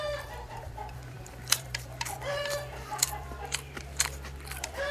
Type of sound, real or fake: fake